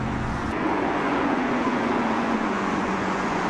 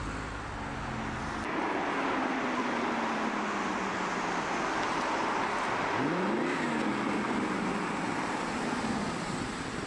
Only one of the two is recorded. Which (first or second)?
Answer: second